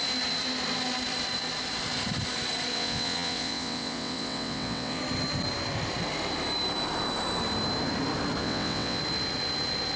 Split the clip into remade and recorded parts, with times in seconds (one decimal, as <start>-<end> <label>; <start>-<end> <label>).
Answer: 0.0-2.7 recorded; 2.7-5.0 remade; 5.0-8.4 recorded; 8.4-9.0 remade; 9.0-10.0 recorded